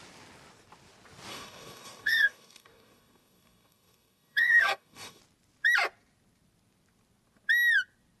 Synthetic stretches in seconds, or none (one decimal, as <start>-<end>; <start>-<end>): 1.3-5.2